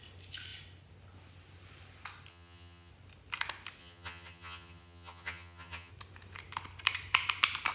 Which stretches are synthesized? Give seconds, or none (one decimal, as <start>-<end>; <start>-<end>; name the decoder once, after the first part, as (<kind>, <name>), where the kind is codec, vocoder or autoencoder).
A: 2.3-2.9 (vocoder, HiFi-GAN); 3.8-5.9